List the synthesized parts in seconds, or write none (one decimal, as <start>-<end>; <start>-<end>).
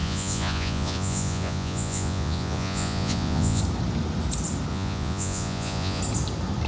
0.0-3.6; 4.7-6.0